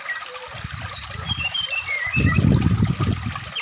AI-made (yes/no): no